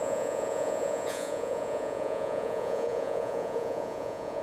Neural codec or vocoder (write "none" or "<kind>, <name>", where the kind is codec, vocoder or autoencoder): vocoder, Vocos